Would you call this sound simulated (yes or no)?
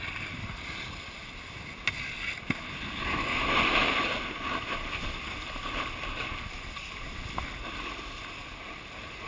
no